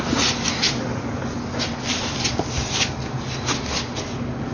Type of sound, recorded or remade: recorded